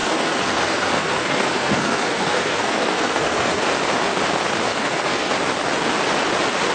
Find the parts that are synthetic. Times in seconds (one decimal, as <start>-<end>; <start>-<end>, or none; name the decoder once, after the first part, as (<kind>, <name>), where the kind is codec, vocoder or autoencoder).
0.0-3.6 (codec, SNAC); 4.7-5.3